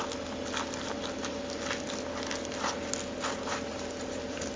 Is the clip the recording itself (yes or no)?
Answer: yes